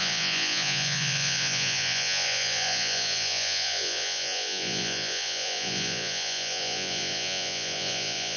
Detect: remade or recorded remade